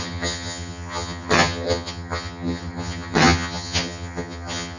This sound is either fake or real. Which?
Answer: fake